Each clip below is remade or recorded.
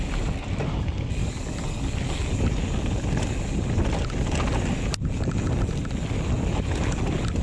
recorded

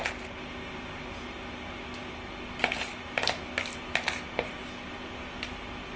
recorded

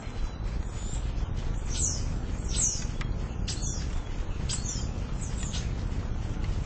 recorded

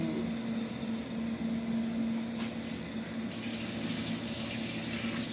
recorded